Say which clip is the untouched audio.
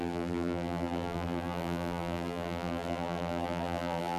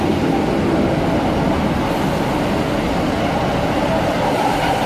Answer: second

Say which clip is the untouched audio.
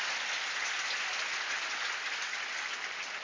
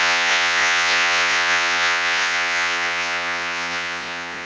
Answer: first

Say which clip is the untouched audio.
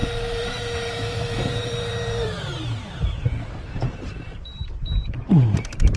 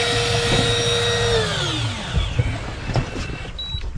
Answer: second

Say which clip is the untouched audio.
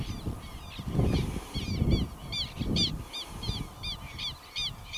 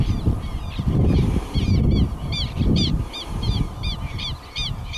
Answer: first